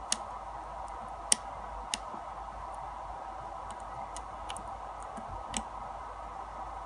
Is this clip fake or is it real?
real